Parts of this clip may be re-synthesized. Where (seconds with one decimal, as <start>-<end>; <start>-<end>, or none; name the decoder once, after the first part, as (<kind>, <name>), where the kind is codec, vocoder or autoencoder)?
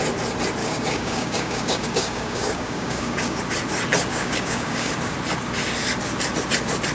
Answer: 0.6-3.4 (codec, DAC); 4.1-4.9